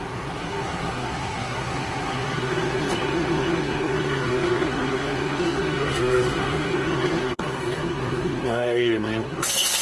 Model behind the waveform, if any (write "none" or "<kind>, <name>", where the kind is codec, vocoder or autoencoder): codec, SNAC